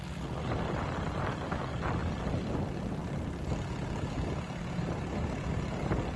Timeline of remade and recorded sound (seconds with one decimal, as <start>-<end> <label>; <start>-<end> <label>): 0.0-2.0 recorded; 2.0-2.5 remade; 2.5-6.2 recorded